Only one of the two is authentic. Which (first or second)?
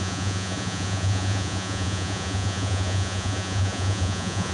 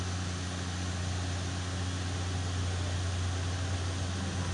second